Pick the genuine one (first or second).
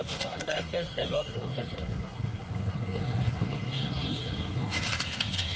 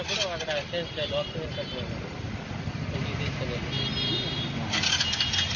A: second